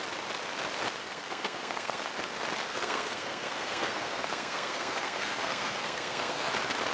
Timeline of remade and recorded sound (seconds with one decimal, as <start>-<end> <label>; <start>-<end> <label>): 0.0-1.0 recorded; 1.0-2.1 remade; 2.1-2.7 recorded; 2.7-6.5 remade; 6.5-6.9 recorded